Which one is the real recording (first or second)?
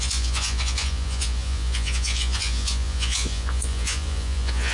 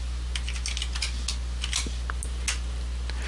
second